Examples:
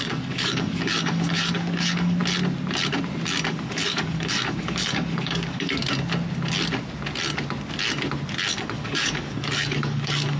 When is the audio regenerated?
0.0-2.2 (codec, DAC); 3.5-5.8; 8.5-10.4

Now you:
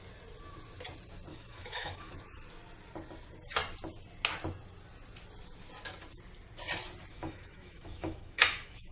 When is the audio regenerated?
1.3-2.1 (autoencoder, DAC-VAE); 7.1-8.9

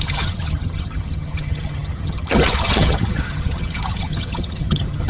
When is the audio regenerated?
0.0-5.1 (vocoder, HiFi-GAN)

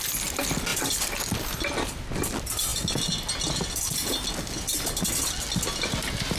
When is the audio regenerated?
0.7-1.2 (vocoder, BigVGAN v2)

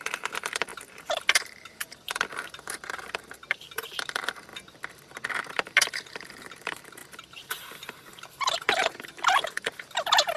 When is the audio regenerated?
0.0-4.5 (vocoder, BigVGAN v2); 5.3-10.4